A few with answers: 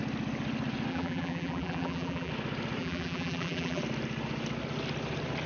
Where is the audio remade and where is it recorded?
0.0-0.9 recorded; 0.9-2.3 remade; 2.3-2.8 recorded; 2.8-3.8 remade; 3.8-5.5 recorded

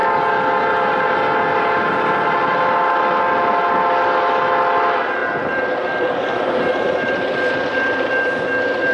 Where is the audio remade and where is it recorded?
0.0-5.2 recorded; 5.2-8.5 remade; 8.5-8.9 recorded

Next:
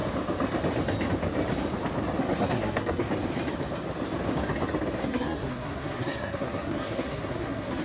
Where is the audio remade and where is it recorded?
0.0-2.2 recorded; 2.2-3.1 remade; 3.1-5.0 recorded; 5.0-7.8 remade